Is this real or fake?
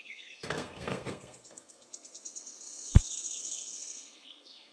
fake